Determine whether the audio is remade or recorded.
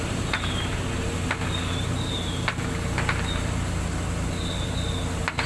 recorded